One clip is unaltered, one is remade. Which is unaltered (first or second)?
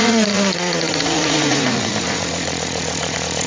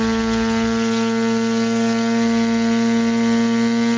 second